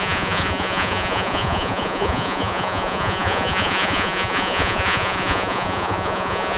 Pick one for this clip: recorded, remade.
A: remade